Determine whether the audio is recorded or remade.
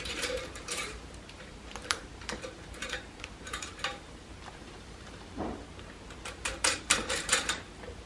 remade